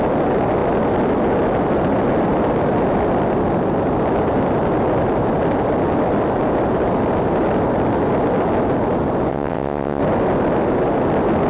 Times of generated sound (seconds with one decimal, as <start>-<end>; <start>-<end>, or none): 9.3-10.0